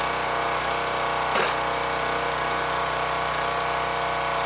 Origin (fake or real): real